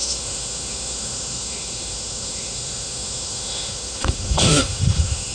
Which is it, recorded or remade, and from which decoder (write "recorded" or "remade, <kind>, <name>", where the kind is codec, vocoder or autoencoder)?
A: remade, autoencoder, DAC-VAE